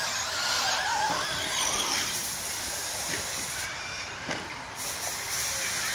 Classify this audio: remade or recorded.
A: recorded